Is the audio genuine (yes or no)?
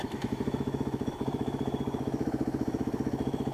no